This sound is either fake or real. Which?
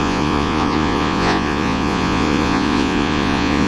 fake